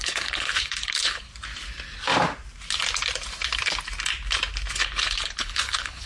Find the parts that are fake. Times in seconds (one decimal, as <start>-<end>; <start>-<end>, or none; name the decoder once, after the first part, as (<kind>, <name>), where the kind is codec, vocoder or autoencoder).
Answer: 0.0-1.3 (codec, HILCodec); 4.7-6.1